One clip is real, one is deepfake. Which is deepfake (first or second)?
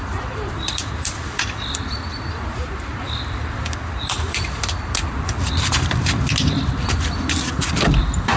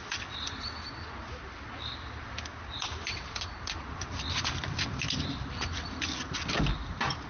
first